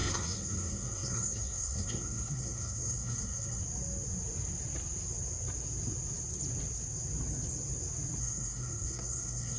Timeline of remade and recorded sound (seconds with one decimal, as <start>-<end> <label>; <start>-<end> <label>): 0.0-3.6 remade; 3.6-8.2 recorded; 8.2-9.6 remade